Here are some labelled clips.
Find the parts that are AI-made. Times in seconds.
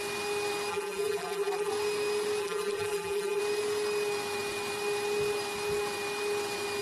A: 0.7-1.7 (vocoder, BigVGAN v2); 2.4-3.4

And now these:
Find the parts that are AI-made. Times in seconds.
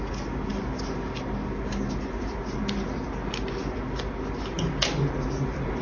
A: none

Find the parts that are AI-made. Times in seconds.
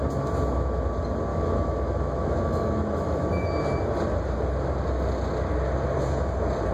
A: 1.3-3.5 (autoencoder, DAC-VAE)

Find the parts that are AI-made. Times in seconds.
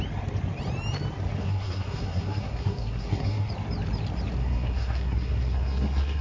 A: 1.4-3.5 (codec, SNAC); 4.4-6.2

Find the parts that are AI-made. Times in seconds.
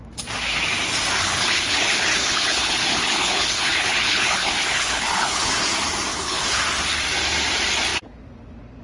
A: 1.2-5.5 (codec, HILCodec); 6.1-6.6